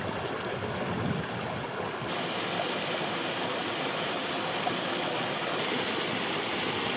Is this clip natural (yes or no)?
yes